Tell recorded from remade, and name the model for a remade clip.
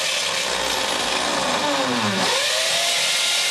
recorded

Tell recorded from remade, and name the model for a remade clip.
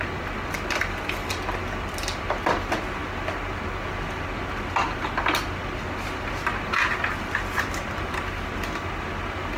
recorded